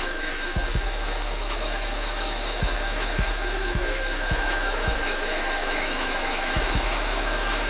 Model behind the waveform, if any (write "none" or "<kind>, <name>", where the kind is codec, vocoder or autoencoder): autoencoder, DAC-VAE